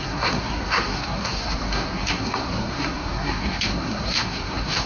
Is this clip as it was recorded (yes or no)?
no